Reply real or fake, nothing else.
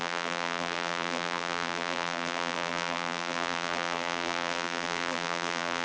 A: fake